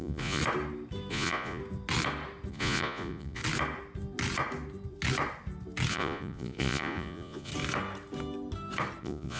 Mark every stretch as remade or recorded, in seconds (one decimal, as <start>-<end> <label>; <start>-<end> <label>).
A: 0.0-0.4 remade; 0.4-1.1 recorded; 1.1-1.6 remade; 1.6-2.5 recorded; 2.5-3.4 remade; 3.4-5.9 recorded; 5.9-7.5 remade; 7.5-9.0 recorded; 9.0-9.4 remade